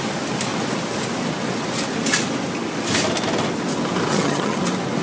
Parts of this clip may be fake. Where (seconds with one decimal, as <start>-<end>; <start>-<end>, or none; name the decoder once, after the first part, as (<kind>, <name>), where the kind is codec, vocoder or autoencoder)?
4.1-4.6 (vocoder, HiFi-GAN)